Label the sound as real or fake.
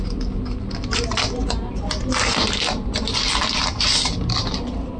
real